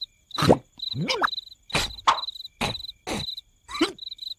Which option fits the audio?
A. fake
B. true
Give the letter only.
B